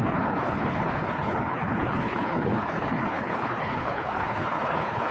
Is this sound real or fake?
fake